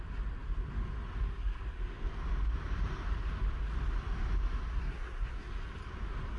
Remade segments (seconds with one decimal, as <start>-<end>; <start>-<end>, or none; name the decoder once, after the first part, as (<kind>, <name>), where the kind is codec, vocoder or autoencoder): 4.8-5.5 (codec, SNAC)